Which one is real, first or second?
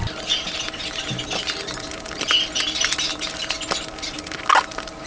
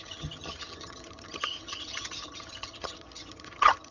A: first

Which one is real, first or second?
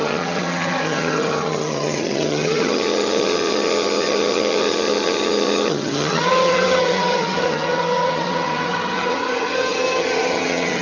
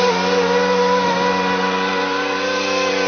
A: second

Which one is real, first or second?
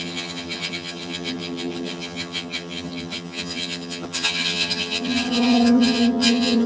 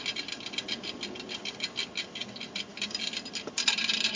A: second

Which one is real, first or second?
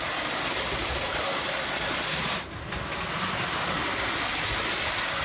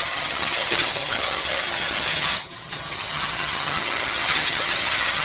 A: first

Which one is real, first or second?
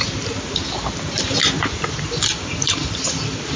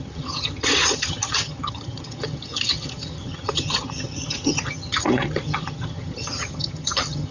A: first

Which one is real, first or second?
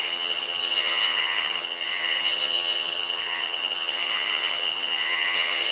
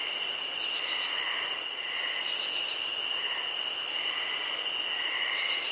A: second